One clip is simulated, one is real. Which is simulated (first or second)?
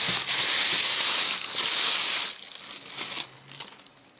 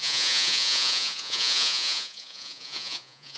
second